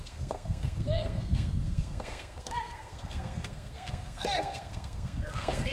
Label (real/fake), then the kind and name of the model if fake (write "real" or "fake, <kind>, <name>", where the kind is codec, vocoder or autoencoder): fake, codec, SNAC